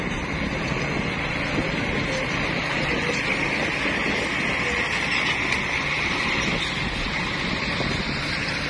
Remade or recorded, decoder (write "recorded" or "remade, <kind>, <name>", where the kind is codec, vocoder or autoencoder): recorded